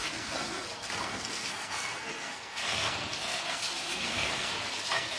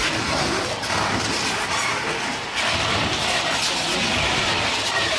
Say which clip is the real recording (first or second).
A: second